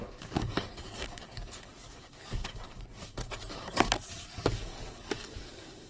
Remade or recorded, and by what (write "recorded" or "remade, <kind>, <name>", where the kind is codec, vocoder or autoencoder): remade, codec, DAC